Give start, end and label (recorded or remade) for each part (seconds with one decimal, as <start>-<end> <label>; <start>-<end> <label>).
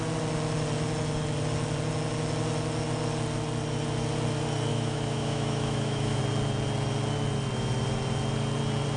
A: 0.0-4.7 recorded; 4.7-6.2 remade; 6.2-9.0 recorded